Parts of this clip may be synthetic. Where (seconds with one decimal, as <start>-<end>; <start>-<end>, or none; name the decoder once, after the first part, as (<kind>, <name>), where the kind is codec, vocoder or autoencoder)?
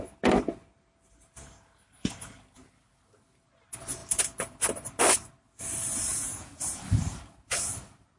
6.1-6.8 (vocoder, Vocos)